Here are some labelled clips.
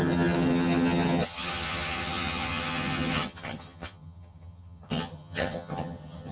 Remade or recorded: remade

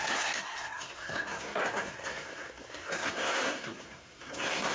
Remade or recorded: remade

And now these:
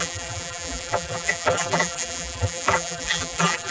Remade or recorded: remade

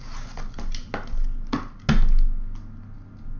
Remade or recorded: recorded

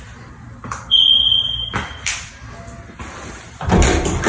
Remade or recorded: recorded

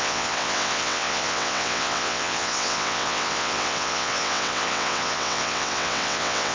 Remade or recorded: remade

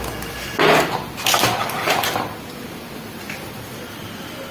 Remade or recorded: recorded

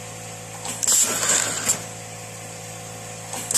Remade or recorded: recorded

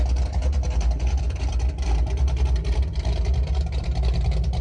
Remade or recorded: remade